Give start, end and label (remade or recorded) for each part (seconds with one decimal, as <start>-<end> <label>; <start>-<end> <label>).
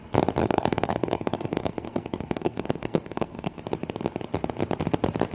0.0-0.4 recorded; 0.4-3.6 remade; 3.6-5.3 recorded